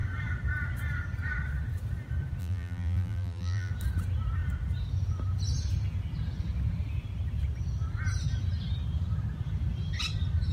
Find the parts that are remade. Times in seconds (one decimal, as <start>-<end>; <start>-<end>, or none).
2.4-3.7